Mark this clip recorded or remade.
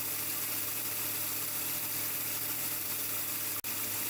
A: recorded